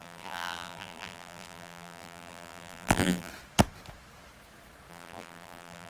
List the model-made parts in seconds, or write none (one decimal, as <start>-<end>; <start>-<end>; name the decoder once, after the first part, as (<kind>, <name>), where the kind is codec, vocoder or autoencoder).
0.0-3.3 (vocoder, BigVGAN v2); 4.9-5.9